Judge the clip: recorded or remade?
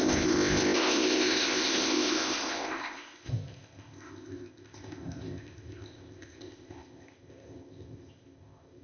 remade